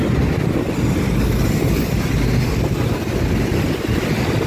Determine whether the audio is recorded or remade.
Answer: recorded